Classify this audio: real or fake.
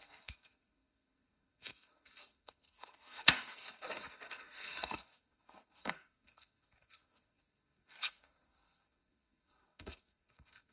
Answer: fake